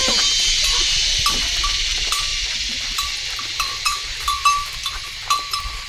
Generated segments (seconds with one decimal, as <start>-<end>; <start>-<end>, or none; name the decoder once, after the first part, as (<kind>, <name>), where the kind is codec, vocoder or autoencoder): 2.3-5.9 (vocoder, BigVGAN v2)